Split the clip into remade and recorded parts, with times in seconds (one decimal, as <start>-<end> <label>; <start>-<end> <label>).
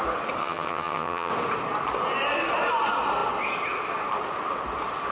0.0-0.4 recorded; 0.4-1.3 remade; 1.3-5.1 recorded